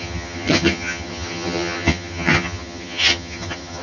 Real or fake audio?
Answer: fake